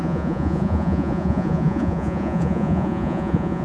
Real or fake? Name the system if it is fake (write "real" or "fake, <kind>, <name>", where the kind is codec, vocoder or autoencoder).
fake, vocoder, Vocos